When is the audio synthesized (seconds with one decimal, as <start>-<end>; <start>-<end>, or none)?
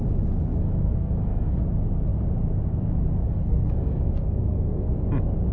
0.5-1.6; 3.2-4.9